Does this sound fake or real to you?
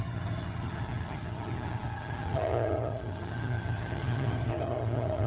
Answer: fake